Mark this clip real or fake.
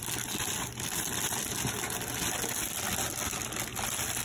real